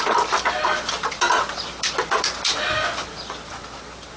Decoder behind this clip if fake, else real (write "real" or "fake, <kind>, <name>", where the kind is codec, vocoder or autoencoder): fake, vocoder, BigVGAN v2